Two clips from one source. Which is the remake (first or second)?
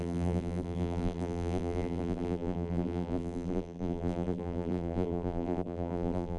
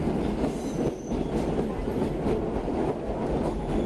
first